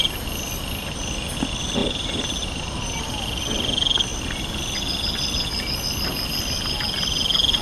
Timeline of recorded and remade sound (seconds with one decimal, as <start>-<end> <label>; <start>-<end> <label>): 0.0-1.8 recorded; 1.8-3.0 remade; 3.0-7.6 recorded